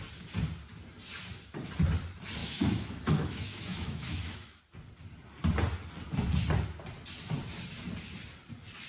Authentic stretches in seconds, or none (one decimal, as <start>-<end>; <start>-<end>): 0.0-2.4; 4.6-8.9